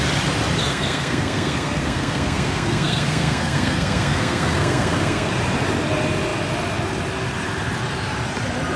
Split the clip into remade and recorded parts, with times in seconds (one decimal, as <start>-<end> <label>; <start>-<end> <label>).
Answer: 0.0-0.6 recorded; 0.6-5.3 remade; 5.3-8.8 recorded